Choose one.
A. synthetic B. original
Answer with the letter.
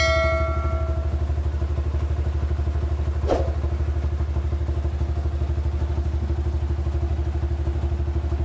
B